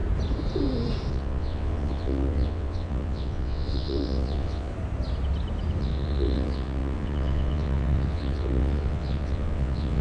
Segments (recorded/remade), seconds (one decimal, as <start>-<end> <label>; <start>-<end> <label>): 0.0-1.1 recorded; 1.1-4.7 remade; 4.7-5.8 recorded; 5.8-10.0 remade